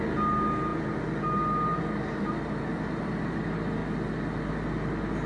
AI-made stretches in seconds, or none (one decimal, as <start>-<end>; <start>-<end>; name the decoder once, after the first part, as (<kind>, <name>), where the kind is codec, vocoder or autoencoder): none